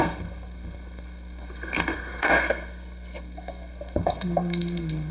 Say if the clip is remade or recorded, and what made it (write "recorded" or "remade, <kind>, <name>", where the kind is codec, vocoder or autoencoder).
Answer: remade, codec, SNAC